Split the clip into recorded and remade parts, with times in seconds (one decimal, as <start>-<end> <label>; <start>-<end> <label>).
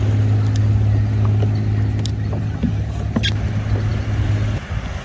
0.0-5.0 recorded